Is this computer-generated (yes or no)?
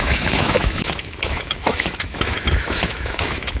yes